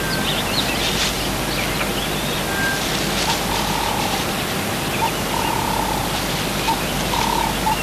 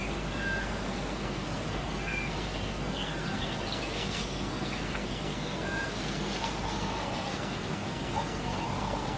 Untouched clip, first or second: first